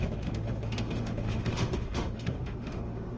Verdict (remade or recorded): remade